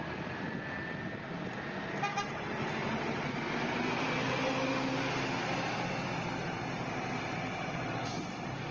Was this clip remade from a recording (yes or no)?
no